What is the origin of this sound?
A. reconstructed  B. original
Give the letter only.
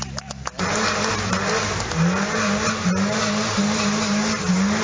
B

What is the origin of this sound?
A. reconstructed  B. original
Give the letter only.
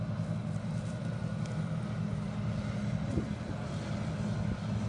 B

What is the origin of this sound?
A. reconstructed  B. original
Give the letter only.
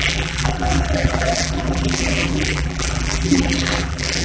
A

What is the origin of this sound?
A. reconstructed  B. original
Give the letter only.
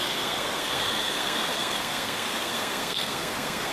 A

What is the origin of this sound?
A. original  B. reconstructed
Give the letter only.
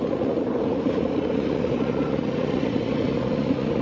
B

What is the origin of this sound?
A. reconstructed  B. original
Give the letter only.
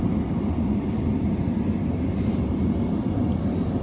B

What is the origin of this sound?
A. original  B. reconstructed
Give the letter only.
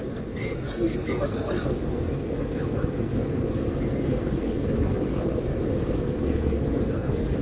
B